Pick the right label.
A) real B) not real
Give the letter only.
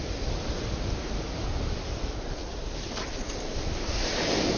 A